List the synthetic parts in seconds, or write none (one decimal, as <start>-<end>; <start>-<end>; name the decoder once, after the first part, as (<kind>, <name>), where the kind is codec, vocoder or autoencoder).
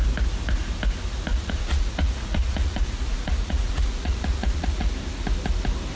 1.3-4.9 (vocoder, Vocos)